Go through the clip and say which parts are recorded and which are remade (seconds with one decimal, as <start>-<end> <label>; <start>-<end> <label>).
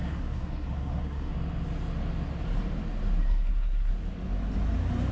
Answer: 0.0-1.3 remade; 1.3-3.2 recorded; 3.2-3.9 remade; 3.9-5.1 recorded